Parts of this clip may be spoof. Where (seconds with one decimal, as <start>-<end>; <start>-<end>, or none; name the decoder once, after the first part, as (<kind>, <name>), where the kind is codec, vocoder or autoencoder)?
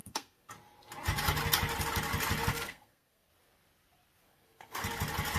0.0-0.5 (codec, SNAC); 2.5-3.3; 4.2-4.8